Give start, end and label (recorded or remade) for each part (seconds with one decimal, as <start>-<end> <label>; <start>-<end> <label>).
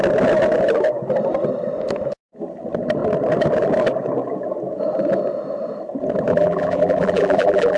0.0-6.3 recorded; 6.3-7.8 remade